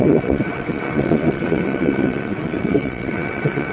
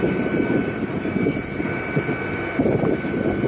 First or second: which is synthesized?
first